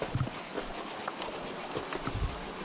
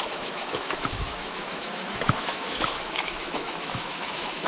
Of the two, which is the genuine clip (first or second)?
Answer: first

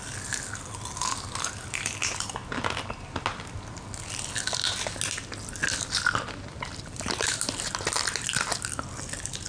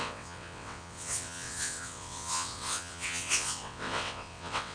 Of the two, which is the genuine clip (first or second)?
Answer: first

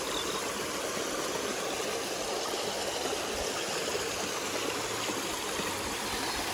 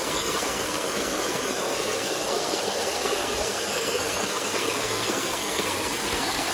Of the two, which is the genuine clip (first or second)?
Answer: first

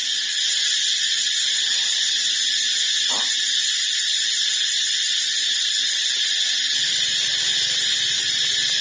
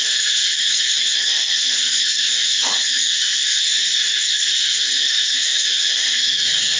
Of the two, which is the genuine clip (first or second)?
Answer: first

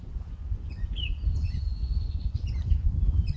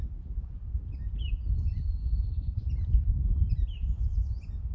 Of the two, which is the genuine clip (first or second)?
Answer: second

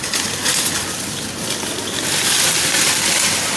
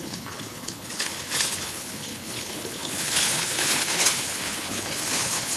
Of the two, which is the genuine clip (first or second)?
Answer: first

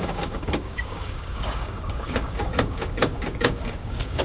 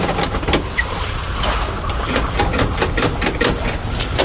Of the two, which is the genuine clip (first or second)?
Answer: second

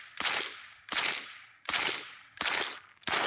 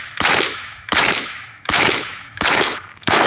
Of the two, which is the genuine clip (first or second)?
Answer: first